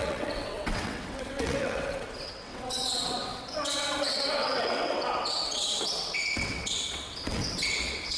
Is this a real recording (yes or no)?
no